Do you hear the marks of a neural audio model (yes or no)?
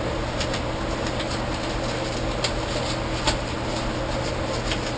no